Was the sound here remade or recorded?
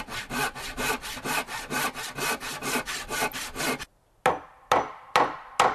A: recorded